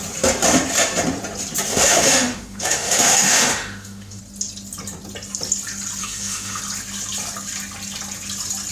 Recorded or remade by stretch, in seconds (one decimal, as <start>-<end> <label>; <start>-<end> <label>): 0.0-1.7 recorded; 1.7-4.2 remade; 4.2-6.0 recorded; 6.0-6.6 remade; 6.6-8.7 recorded

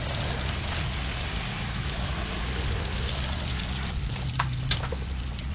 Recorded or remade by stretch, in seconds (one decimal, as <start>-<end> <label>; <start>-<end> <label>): 0.0-1.5 recorded; 1.5-2.3 remade; 2.3-5.5 recorded

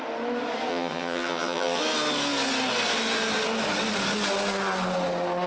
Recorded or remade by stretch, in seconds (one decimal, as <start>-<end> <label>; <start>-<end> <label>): 0.0-0.7 recorded; 0.7-1.8 remade; 1.8-5.5 recorded